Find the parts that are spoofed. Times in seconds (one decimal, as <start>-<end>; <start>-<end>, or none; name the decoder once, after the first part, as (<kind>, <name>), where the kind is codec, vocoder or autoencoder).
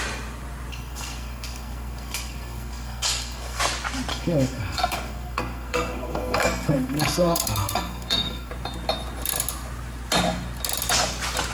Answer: 0.7-3.6 (codec, SNAC); 4.1-8.5